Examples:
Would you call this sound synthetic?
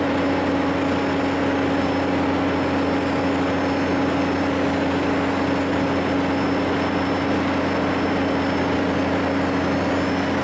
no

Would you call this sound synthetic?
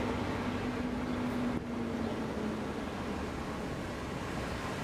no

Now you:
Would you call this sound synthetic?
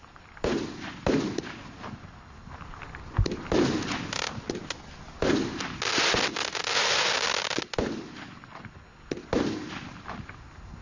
no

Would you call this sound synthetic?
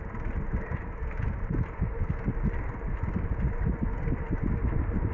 no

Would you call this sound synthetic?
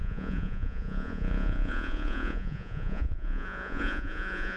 yes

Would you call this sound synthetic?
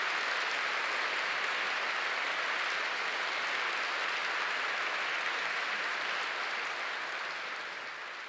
no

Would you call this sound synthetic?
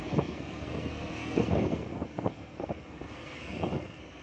yes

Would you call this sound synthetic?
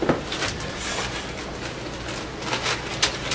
no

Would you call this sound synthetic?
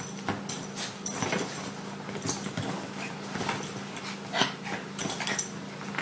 no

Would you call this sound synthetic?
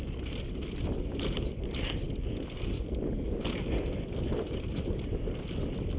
no